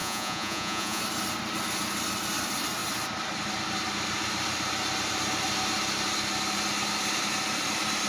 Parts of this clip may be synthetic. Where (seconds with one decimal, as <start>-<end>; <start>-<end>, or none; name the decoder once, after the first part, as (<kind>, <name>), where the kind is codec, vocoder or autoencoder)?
0.0-1.0 (vocoder, Vocos)